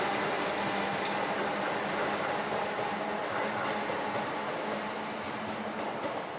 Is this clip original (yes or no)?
yes